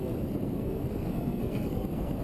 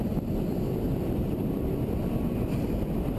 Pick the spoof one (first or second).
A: first